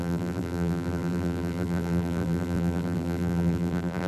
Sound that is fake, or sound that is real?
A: fake